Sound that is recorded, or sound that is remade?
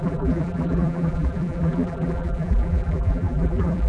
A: remade